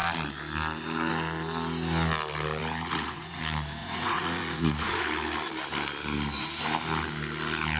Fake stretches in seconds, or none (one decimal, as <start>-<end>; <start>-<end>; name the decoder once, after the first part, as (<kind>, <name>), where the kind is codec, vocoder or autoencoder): 2.6-3.4 (vocoder, Vocos); 3.8-5.0